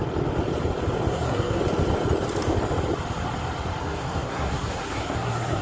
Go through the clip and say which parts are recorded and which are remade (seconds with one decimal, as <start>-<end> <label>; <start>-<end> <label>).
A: 0.0-1.1 recorded; 1.1-1.6 remade; 1.6-3.8 recorded; 3.8-5.6 remade